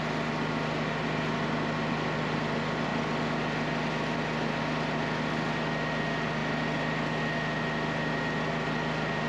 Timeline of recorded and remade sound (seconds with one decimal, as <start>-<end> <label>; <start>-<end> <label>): 0.0-9.3 recorded